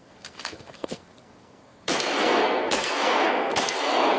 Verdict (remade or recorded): remade